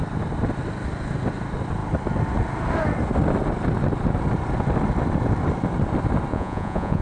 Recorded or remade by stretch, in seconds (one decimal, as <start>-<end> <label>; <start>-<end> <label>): 0.0-6.3 recorded; 6.3-7.0 remade